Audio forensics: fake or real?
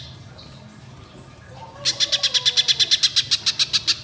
real